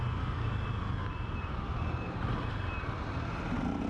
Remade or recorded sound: recorded